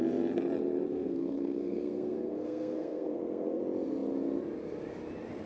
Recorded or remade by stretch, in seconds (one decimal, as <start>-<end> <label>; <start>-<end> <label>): 0.0-0.9 recorded; 0.9-3.6 remade; 3.6-5.5 recorded